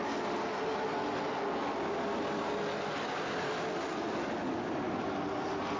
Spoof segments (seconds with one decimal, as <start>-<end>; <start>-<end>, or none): none